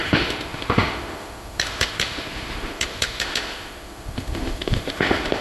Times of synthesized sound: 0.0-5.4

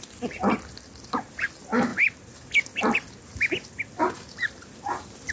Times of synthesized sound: none

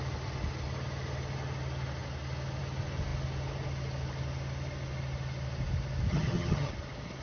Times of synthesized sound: 6.1-6.7

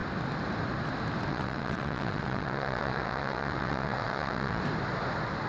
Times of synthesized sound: 1.3-4.6

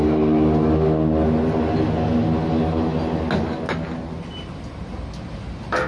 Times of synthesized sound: none

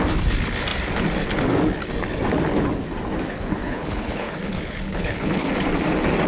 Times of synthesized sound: 3.3-5.5

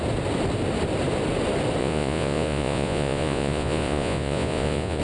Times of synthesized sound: 1.8-5.0